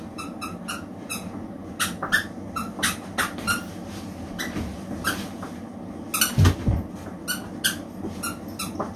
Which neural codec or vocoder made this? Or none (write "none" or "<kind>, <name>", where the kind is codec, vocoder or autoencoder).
none